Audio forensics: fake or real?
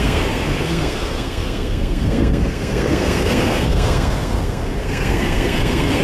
fake